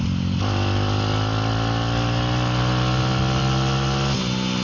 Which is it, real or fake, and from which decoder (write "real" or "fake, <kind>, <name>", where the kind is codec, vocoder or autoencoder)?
real